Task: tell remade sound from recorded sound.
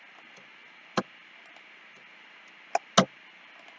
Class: recorded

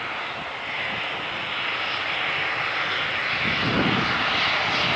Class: recorded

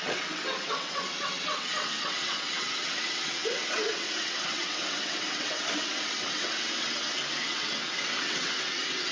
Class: remade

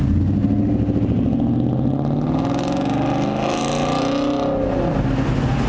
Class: recorded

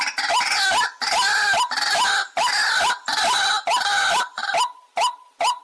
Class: recorded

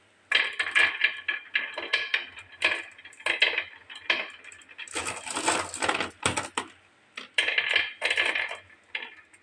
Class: recorded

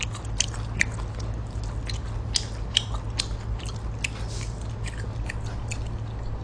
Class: recorded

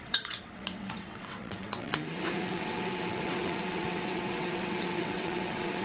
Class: remade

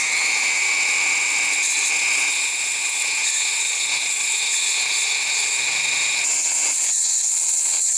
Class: remade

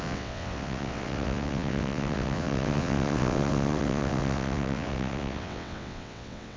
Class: remade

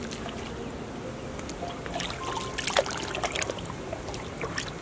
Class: recorded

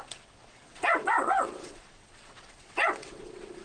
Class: remade